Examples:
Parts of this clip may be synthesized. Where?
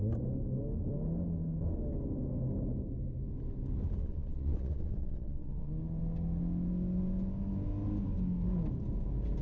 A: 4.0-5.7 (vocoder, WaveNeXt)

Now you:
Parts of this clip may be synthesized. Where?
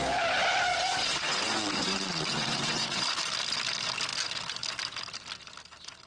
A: 0.7-3.0 (vocoder, WaveNeXt)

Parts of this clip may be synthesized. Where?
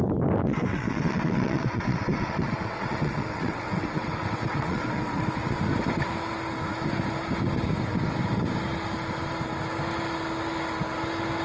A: 0.4-5.6 (vocoder, WaveNeXt)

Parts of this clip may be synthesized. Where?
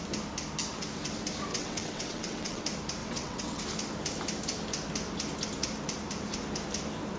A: 1.5-2.6 (vocoder, WaveNeXt); 3.0-3.6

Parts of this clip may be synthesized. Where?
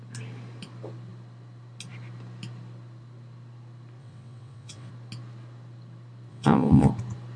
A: 4.0-4.9 (vocoder, WaveNeXt); 6.3-6.9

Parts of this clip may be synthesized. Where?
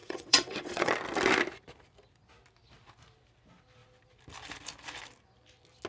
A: 0.0-0.9 (vocoder, WaveNeXt)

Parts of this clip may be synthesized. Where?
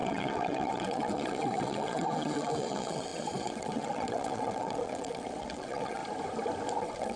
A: 0.0-6.0 (vocoder, WaveNeXt); 6.8-7.2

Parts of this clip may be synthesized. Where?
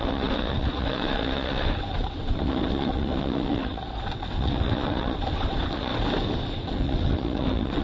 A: 0.0-5.9 (vocoder, WaveNeXt); 6.5-7.8